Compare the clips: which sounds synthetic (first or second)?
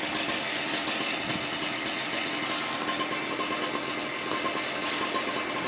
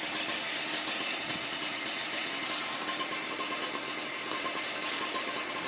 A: second